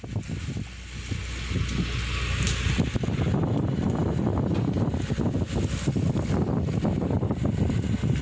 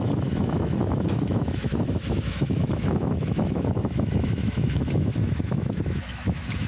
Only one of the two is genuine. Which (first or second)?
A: first